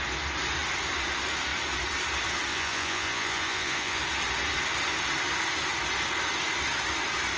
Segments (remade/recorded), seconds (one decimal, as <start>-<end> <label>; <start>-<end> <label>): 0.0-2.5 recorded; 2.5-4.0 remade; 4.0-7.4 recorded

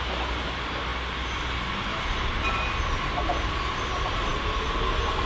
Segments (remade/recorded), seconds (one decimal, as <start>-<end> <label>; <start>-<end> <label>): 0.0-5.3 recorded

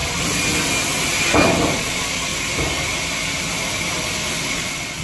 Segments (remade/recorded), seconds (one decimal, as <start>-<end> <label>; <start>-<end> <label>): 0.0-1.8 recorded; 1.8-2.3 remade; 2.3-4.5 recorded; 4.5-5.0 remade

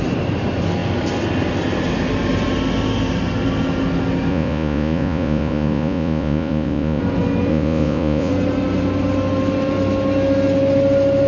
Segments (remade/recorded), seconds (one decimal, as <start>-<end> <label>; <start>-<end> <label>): 0.0-4.3 recorded; 4.3-7.0 remade; 7.0-7.5 recorded; 7.5-8.3 remade; 8.3-11.3 recorded